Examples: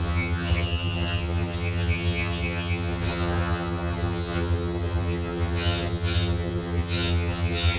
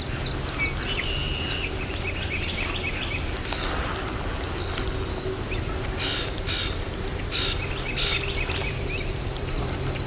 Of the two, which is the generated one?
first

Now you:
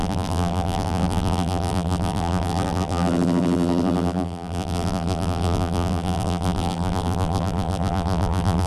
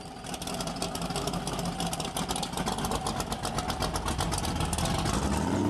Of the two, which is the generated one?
first